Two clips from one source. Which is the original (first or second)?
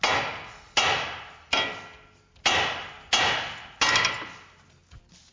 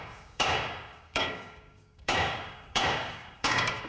first